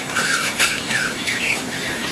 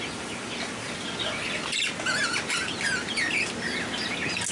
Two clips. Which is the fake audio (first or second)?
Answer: first